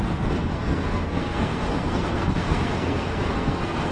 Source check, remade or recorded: remade